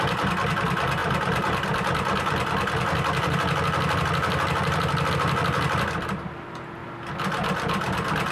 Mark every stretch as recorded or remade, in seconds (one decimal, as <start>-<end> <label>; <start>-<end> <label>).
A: 0.0-8.3 recorded